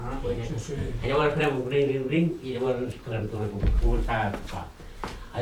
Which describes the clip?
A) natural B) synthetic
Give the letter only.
B